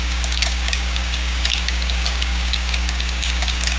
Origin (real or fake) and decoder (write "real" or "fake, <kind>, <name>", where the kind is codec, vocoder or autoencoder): fake, codec, DAC